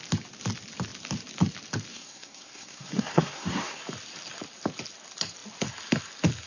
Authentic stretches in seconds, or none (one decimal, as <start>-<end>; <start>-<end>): 0.0-1.9; 3.8-6.5